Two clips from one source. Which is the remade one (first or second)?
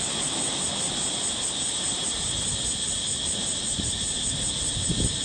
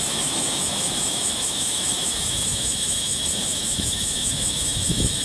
second